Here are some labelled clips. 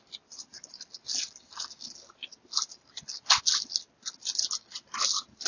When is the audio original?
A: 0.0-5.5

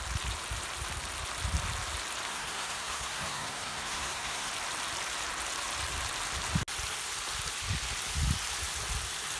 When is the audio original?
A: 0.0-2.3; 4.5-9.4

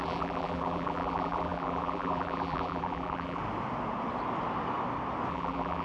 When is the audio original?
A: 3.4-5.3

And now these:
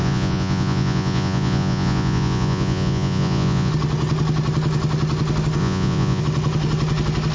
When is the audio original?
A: 3.7-5.6; 6.2-7.3